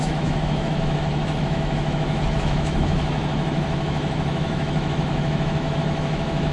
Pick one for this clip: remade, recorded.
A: remade